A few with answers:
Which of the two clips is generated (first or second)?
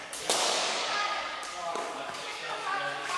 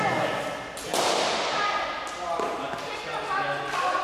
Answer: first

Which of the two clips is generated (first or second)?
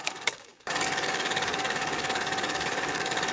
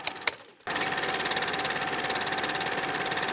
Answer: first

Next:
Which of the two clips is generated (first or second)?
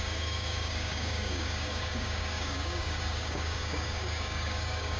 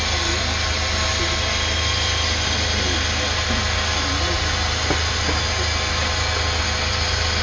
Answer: first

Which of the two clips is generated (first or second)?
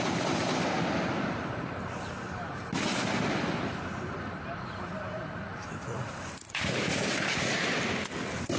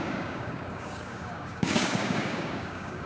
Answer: second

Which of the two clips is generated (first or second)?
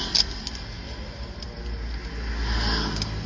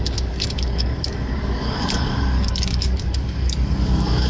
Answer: second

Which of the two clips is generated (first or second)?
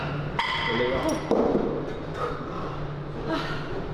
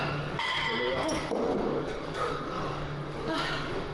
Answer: second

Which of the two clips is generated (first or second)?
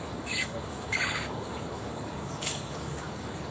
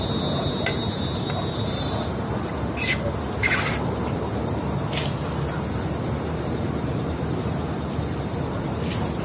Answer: first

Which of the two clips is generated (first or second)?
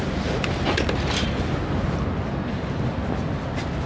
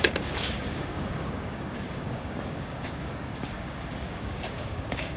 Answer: second